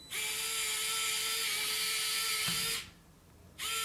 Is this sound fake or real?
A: real